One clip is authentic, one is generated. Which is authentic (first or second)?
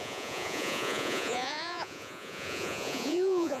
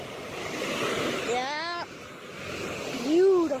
second